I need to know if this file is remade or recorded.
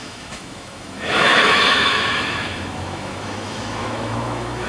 remade